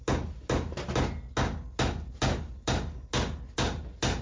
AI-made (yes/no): no